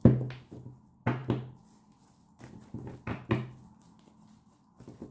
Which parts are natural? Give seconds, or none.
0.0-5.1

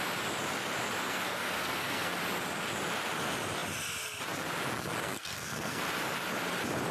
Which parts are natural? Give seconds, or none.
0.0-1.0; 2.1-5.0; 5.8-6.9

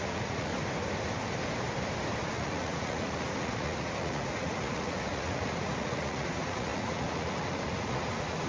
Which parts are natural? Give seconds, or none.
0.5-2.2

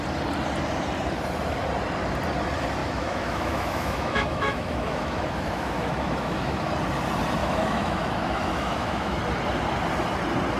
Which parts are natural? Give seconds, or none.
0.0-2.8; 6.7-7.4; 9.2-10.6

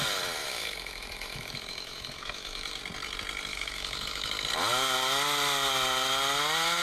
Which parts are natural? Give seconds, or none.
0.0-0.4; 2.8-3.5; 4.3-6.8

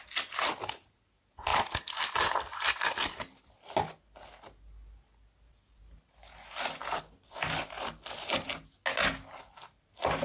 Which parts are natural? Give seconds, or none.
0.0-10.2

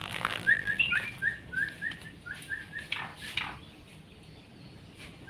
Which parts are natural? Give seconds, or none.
0.8-5.3

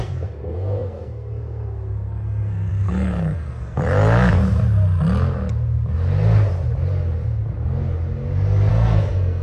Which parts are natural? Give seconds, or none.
3.8-8.7